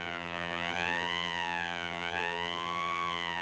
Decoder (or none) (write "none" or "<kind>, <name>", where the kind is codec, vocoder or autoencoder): vocoder, BigVGAN v2